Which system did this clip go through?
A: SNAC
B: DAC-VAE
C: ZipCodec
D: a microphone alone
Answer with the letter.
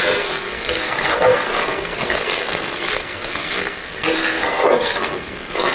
A